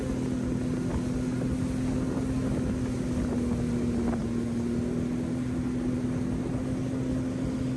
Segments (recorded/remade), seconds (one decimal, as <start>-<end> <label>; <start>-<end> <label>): 0.0-7.8 recorded